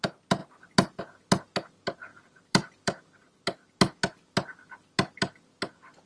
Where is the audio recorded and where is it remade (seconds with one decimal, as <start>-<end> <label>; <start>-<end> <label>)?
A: 0.0-2.1 recorded; 2.1-3.1 remade; 3.1-6.1 recorded